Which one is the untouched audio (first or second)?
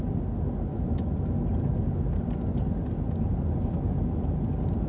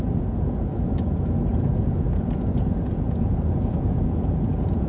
first